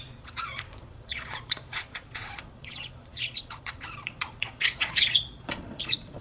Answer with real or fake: fake